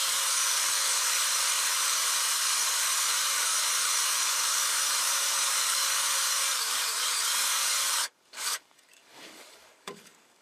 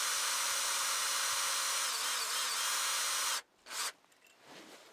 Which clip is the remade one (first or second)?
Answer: first